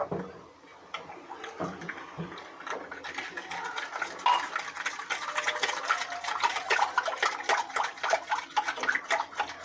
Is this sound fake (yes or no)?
no